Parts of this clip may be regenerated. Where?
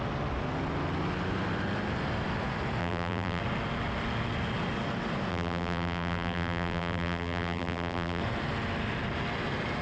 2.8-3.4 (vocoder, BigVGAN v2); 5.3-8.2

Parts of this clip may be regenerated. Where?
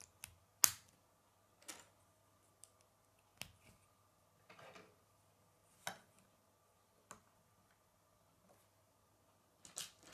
none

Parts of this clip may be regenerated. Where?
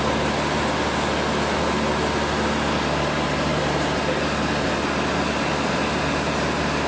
none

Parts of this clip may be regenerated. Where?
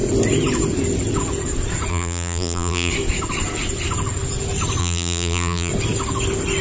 1.9-2.9 (vocoder, BigVGAN v2); 4.8-5.7